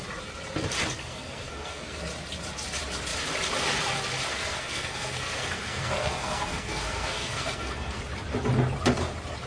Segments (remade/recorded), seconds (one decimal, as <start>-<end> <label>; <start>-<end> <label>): 0.0-1.0 recorded; 1.0-2.0 remade; 2.0-4.3 recorded; 4.3-8.0 remade; 8.0-9.5 recorded